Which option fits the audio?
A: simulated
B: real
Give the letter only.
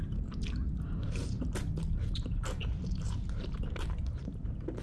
A